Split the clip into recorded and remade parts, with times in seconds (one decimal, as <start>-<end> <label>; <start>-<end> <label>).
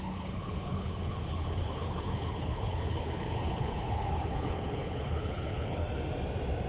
0.0-5.8 remade; 5.8-6.7 recorded